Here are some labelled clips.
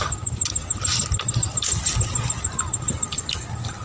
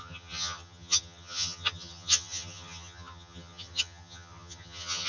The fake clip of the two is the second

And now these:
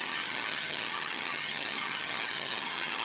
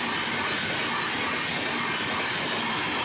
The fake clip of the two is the first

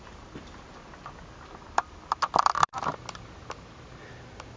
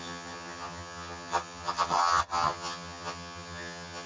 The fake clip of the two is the second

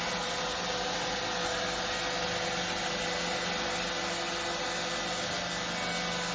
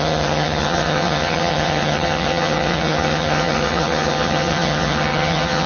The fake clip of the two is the second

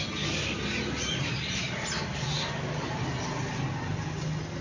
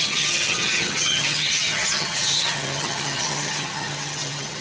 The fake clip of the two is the second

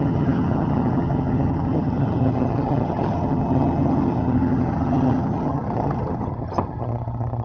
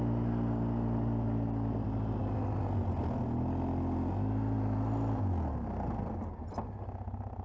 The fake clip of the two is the first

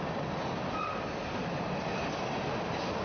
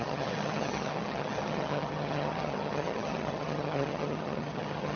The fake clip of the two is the second